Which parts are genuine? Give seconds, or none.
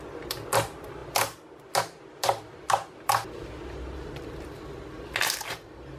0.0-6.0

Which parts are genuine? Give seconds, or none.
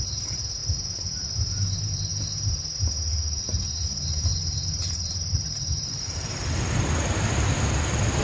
0.6-1.2; 2.1-3.2; 7.0-8.2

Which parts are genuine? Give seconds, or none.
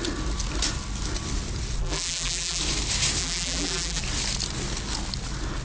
0.0-1.8; 2.6-3.2; 4.0-5.6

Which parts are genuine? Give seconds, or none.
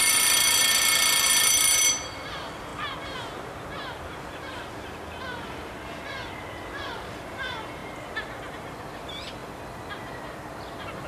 2.7-6.8; 7.8-8.5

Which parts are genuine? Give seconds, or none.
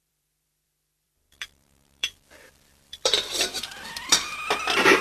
4.4-5.0